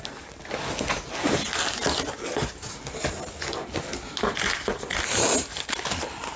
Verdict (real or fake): real